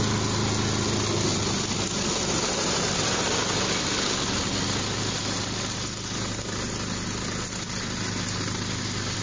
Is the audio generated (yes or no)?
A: no